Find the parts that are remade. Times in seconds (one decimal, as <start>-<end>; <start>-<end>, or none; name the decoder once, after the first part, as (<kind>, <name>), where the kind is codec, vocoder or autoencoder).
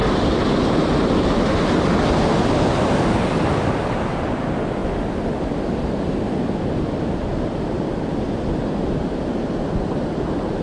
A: none